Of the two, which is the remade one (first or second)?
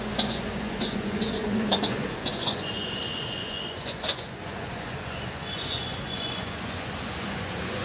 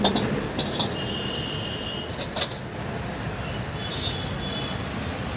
first